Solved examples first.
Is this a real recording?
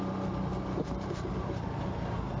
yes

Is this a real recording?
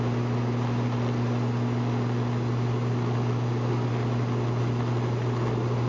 yes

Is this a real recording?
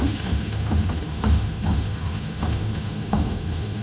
no